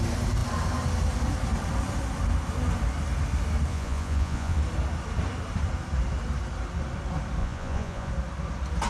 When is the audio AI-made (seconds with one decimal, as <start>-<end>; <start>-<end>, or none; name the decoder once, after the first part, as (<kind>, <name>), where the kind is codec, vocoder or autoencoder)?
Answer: 3.7-4.6 (vocoder, Vocos); 7.4-8.1